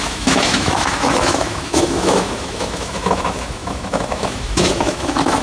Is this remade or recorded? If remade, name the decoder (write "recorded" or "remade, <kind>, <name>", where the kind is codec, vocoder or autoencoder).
remade, autoencoder, DAC-VAE